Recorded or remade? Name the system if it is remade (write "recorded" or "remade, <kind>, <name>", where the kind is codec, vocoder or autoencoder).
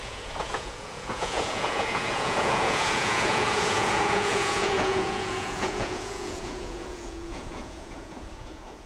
remade, vocoder, Vocos